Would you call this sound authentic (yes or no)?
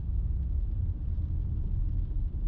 yes